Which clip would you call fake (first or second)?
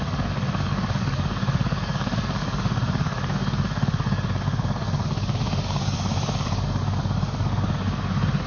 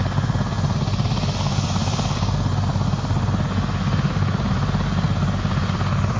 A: first